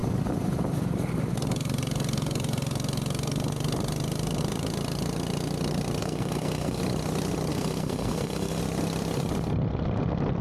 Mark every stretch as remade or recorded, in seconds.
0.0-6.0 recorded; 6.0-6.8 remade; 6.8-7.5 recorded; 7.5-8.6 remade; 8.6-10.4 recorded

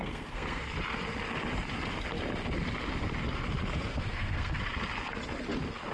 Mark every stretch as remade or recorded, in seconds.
0.0-0.6 remade; 0.6-3.9 recorded; 3.9-4.6 remade; 4.6-5.9 recorded

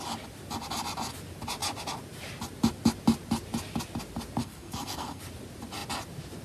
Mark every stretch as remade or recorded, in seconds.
0.0-4.4 recorded; 4.4-5.2 remade; 5.2-6.4 recorded

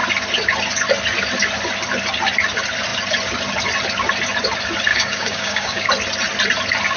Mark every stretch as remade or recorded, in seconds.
0.0-4.9 recorded; 4.9-5.9 remade; 5.9-7.0 recorded